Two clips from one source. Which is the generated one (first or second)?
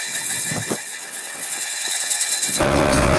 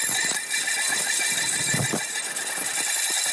first